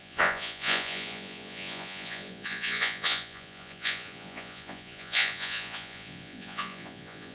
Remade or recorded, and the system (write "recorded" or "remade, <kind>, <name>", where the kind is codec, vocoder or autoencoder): remade, vocoder, Vocos